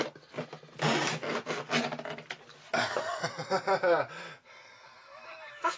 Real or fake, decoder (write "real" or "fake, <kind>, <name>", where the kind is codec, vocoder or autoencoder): real